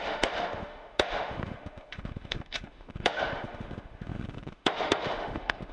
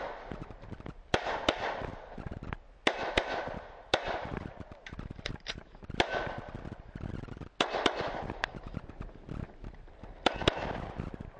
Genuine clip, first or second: second